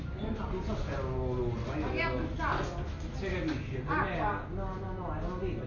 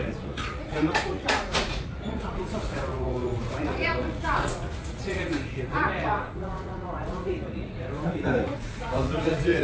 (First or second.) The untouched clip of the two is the first